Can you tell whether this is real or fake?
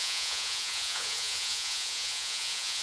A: fake